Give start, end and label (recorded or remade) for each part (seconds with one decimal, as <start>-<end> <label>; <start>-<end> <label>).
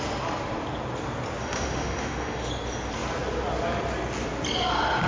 0.0-1.4 recorded; 1.4-2.5 remade; 2.5-5.1 recorded